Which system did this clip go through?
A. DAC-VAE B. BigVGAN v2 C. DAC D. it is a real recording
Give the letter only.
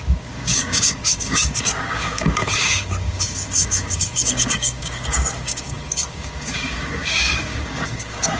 C